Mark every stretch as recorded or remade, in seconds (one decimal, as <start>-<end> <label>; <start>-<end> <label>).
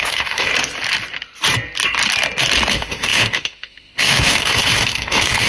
0.0-0.5 remade; 0.5-2.7 recorded; 2.7-5.5 remade